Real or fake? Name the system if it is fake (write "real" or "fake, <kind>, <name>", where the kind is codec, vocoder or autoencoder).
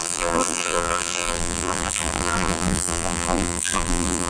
fake, vocoder, BigVGAN v2